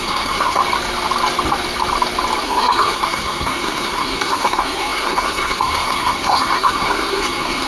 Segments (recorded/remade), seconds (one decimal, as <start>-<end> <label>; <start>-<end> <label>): 0.0-0.6 remade; 0.6-2.4 recorded; 2.4-7.7 remade